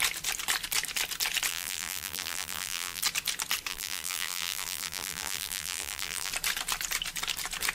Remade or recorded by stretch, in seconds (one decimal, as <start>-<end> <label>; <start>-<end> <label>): 0.0-1.5 recorded; 1.5-3.0 remade; 3.0-3.7 recorded; 3.7-6.3 remade; 6.3-7.7 recorded